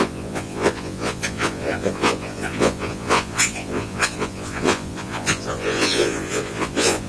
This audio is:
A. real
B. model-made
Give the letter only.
B